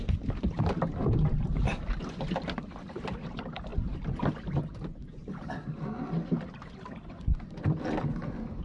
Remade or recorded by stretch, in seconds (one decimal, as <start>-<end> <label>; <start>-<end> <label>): 0.0-8.6 recorded